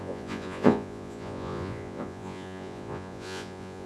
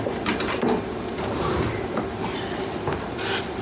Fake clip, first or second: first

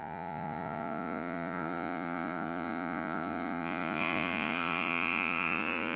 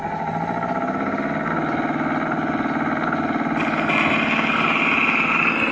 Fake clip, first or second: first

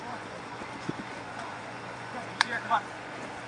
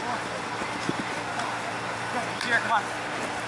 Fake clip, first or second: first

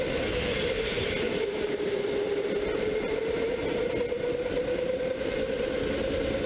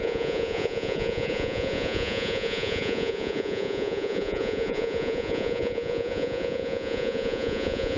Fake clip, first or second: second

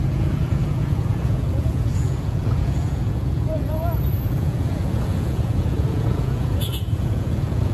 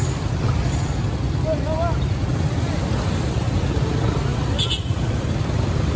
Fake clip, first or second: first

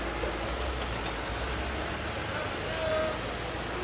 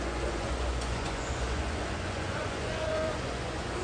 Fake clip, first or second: second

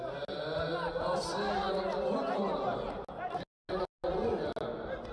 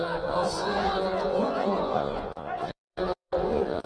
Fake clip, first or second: second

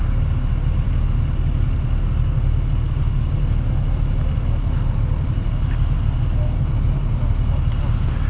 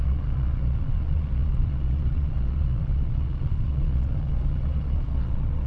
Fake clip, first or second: second